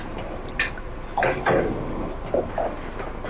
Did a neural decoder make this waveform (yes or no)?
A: no